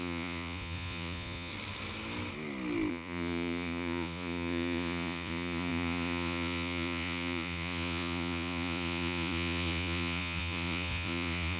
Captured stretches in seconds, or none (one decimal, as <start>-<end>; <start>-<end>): 1.5-2.9